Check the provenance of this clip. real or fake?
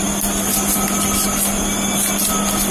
real